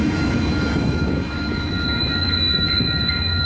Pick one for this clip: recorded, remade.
remade